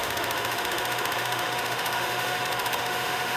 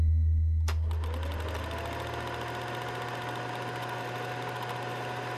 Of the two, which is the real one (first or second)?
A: second